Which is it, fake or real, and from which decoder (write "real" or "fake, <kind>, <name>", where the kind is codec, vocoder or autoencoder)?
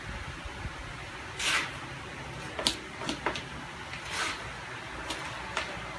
real